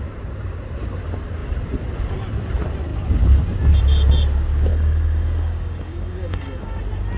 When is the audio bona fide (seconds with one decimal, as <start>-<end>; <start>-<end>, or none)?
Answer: 0.0-4.7; 6.8-7.2